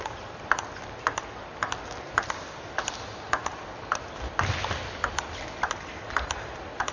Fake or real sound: real